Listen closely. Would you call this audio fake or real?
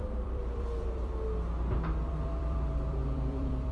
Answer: fake